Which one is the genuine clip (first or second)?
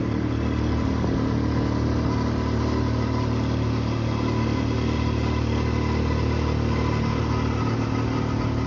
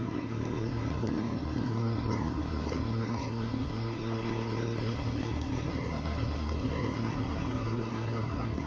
first